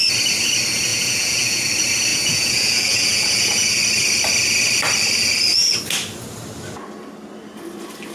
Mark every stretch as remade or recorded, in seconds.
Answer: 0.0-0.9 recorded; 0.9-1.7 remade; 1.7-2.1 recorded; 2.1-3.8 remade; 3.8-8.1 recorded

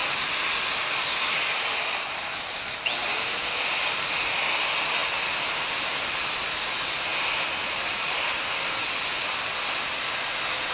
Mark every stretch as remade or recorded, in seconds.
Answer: 0.0-10.7 recorded

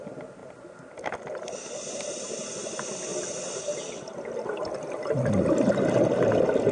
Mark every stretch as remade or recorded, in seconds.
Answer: 0.0-6.7 recorded

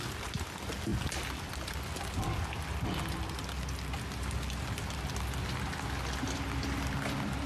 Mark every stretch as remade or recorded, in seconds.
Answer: 0.0-7.5 recorded

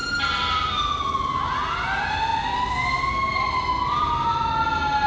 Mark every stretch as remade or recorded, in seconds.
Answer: 0.0-5.1 recorded